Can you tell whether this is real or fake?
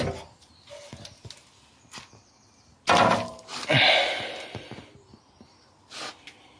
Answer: real